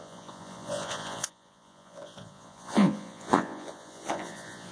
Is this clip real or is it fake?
fake